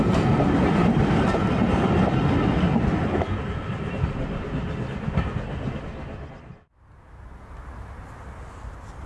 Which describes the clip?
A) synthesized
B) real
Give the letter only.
B